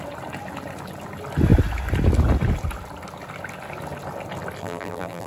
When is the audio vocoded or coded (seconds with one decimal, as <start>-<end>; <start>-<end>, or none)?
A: 4.6-5.3